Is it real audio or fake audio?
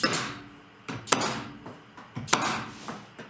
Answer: real